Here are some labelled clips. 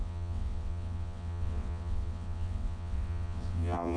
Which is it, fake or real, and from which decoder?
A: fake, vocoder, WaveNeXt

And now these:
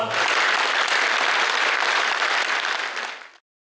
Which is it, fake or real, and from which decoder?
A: real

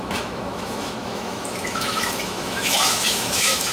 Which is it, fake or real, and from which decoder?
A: fake, autoencoder, DAC-VAE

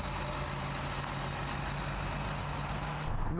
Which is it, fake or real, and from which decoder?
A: real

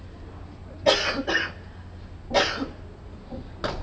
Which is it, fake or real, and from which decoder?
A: real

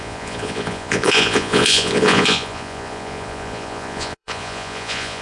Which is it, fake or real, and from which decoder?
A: fake, vocoder, Vocos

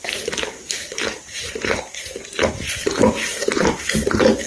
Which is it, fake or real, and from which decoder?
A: fake, vocoder, BigVGAN v2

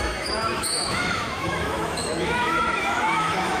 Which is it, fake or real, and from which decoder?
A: fake, autoencoder, DAC-VAE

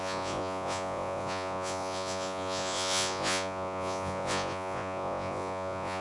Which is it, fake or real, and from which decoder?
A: fake, vocoder, Vocos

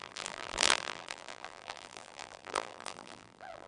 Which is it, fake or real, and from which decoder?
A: fake, vocoder, BigVGAN v2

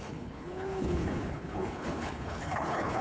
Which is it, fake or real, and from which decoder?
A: fake, codec, HILCodec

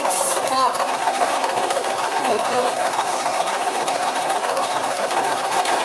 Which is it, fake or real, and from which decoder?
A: fake, codec, SNAC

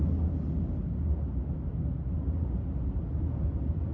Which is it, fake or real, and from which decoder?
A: real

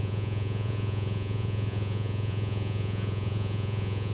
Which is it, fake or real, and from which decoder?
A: fake, vocoder, Vocos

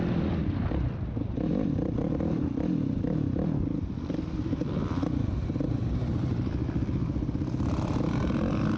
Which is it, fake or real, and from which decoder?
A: fake, vocoder, BigVGAN v2